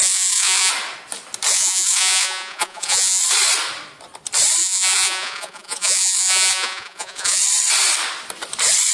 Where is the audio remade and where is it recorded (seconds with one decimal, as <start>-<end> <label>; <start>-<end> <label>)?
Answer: 0.0-0.7 remade; 0.7-1.5 recorded; 1.5-3.2 remade; 3.2-4.6 recorded; 4.6-7.4 remade; 7.4-8.9 recorded